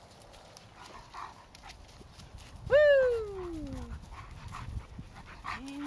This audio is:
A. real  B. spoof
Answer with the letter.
A